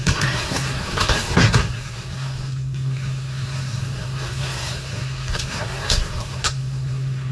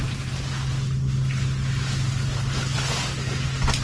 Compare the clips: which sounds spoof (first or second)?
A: first